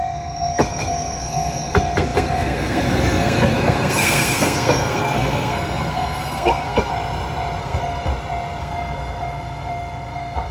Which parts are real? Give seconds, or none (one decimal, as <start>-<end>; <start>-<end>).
6.9-7.6; 8.1-8.6